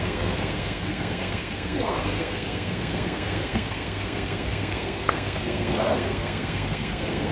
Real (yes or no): no